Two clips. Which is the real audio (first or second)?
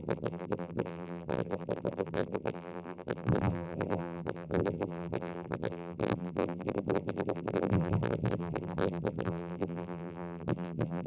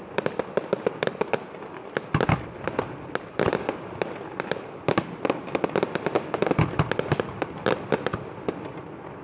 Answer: second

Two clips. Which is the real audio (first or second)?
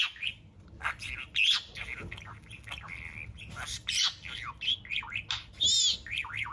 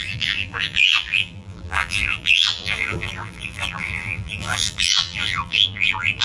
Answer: first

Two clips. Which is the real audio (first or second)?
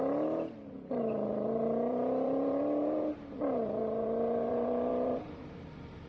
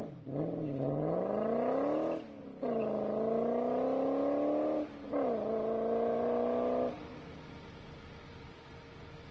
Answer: second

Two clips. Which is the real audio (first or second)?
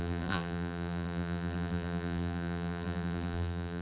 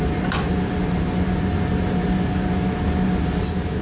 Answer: second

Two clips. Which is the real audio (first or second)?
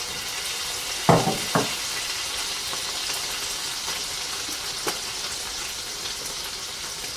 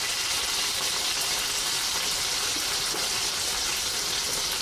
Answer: first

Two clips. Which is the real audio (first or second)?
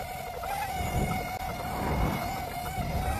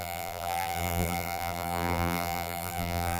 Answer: first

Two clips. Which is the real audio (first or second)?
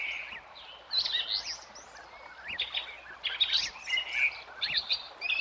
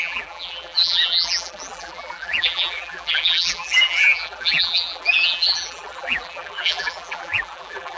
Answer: first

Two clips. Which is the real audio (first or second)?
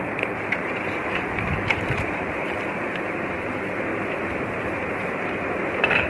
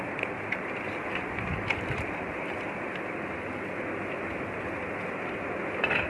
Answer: second